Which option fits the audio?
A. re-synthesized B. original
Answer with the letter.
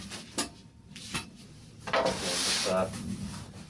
B